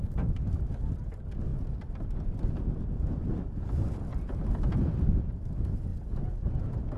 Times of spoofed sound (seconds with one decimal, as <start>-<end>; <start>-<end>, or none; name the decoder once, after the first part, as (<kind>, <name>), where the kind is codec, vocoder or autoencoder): 5.9-7.0 (vocoder, Vocos)